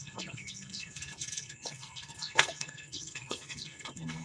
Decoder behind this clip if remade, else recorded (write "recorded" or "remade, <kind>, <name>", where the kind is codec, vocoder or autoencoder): remade, codec, SNAC